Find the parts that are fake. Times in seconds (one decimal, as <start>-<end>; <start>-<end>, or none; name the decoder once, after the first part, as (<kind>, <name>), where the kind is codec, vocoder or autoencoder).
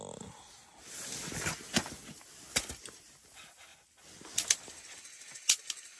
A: none